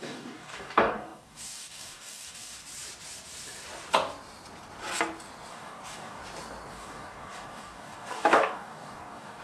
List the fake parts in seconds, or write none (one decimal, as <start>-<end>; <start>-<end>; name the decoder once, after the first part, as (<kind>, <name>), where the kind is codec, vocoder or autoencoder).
0.0-2.6 (codec, DAC); 5.5-6.2; 6.7-9.4